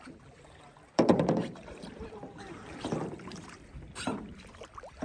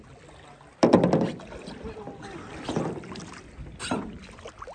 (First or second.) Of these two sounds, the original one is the second